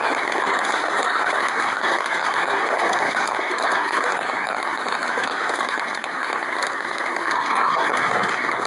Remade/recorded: remade